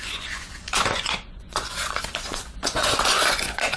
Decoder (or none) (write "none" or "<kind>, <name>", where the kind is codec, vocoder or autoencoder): vocoder, Vocos